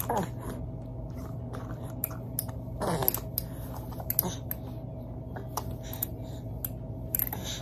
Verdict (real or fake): real